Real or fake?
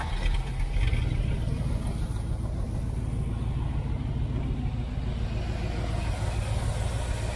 real